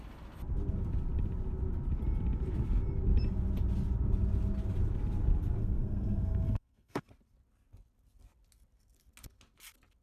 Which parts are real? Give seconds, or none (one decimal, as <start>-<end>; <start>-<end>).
0.0-5.6; 7.1-10.0